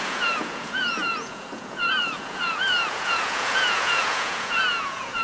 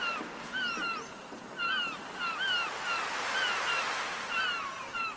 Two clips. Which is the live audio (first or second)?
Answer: second